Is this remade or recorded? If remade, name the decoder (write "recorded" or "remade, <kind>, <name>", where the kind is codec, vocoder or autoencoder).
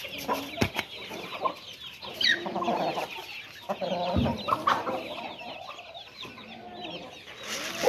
recorded